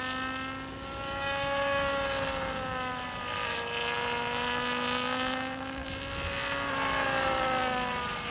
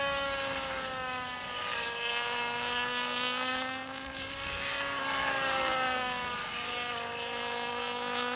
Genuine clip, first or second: first